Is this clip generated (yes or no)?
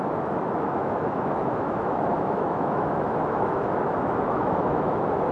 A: yes